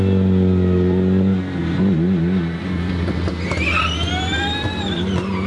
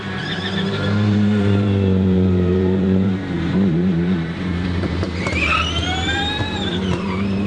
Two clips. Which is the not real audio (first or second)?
second